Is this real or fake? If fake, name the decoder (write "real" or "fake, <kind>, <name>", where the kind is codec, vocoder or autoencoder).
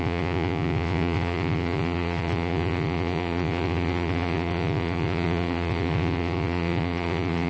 fake, vocoder, Vocos